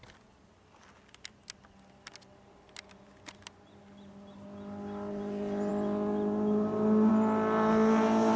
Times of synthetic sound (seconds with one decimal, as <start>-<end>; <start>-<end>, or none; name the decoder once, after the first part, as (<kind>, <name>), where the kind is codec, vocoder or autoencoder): none